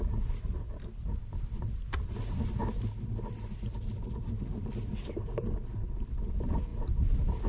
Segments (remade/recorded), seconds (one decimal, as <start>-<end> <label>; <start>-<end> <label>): 0.0-6.7 remade; 6.7-7.5 recorded